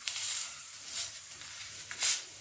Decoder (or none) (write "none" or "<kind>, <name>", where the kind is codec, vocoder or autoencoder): vocoder, BigVGAN v2